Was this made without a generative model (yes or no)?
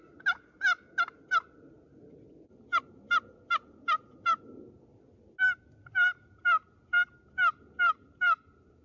yes